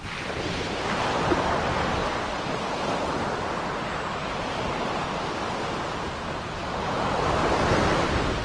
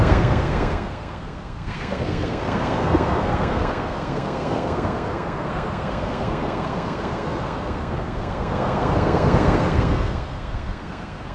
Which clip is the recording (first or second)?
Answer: first